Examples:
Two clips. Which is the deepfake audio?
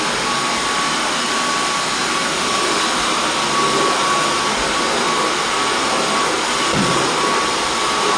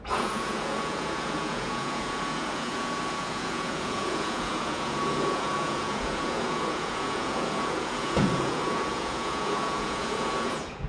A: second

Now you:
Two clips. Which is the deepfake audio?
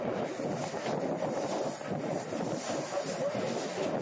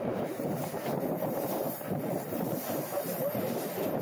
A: second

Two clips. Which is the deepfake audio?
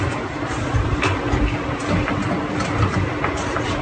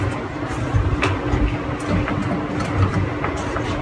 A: first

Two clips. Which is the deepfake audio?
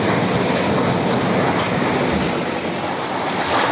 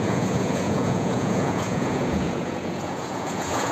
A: second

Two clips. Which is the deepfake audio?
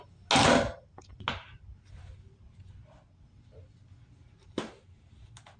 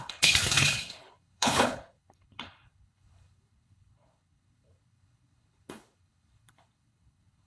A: second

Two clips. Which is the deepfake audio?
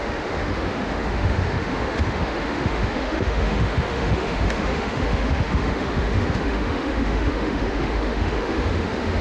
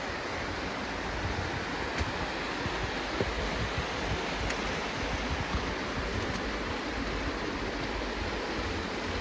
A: first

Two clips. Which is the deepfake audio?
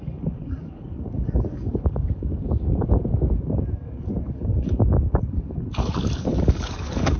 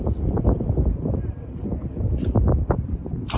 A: first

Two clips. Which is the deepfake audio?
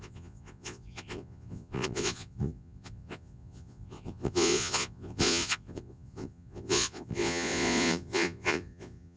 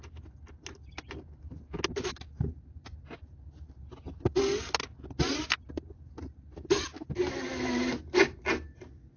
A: first